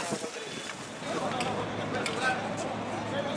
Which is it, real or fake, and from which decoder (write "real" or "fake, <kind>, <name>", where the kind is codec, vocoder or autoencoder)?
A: real